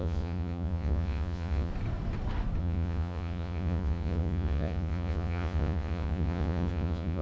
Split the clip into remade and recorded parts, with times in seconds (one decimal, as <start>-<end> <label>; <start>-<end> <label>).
0.0-1.7 remade; 1.7-2.6 recorded; 2.6-7.2 remade

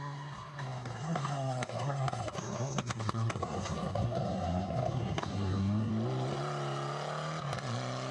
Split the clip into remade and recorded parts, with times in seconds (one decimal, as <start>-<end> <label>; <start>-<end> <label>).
0.0-5.9 remade; 5.9-8.1 recorded

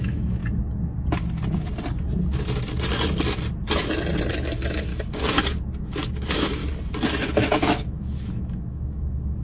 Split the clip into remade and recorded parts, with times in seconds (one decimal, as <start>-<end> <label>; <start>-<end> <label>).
0.0-0.4 remade; 0.4-4.3 recorded; 4.3-4.9 remade; 4.9-5.8 recorded; 5.8-6.6 remade; 6.6-7.3 recorded; 7.3-9.4 remade

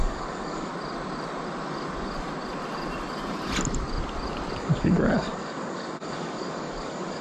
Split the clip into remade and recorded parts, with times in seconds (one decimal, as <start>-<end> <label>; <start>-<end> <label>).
0.0-0.7 remade; 0.7-4.6 recorded; 4.6-7.2 remade

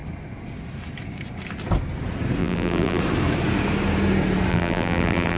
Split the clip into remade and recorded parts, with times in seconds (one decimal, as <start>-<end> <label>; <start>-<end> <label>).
0.0-2.4 recorded; 2.4-3.0 remade; 3.0-4.5 recorded; 4.5-5.4 remade

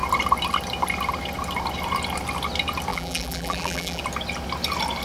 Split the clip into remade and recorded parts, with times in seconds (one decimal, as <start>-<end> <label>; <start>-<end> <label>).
0.0-2.9 recorded; 2.9-4.0 remade; 4.0-5.0 recorded

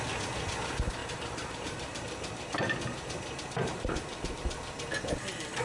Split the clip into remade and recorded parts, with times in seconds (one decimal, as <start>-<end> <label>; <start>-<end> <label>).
0.0-1.0 recorded; 1.0-4.4 remade; 4.4-5.6 recorded